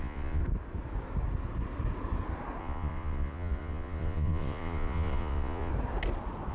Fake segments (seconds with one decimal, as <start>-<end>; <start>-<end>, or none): 0.0-0.4; 2.6-5.7